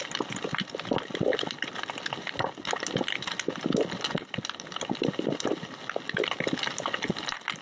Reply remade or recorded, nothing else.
recorded